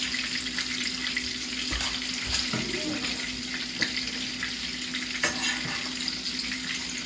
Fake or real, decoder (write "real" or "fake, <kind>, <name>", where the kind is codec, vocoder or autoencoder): real